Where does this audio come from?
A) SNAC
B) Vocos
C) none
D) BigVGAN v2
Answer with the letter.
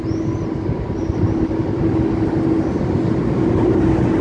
C